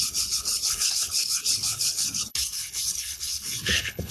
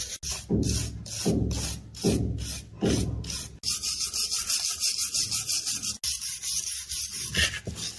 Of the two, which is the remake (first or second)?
first